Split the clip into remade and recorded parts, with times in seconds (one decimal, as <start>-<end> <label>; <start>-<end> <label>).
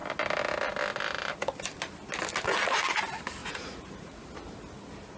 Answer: 0.0-3.4 recorded; 3.4-4.3 remade; 4.3-5.2 recorded